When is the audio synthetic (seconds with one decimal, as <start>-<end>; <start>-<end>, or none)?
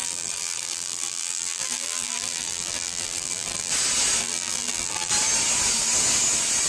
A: 0.0-3.7; 4.2-5.1